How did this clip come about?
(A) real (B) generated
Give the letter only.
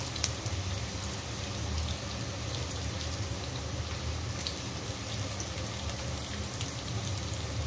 A